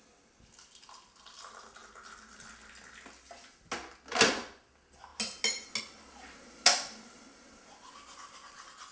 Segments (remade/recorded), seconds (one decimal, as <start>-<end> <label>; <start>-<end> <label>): 0.0-8.9 recorded